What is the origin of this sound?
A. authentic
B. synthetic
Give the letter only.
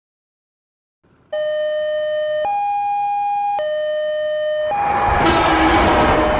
A